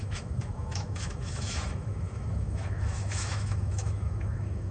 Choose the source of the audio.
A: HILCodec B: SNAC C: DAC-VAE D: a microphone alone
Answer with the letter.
C